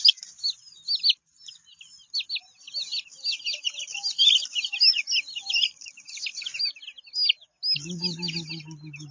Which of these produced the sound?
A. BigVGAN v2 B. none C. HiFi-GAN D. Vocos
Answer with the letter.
B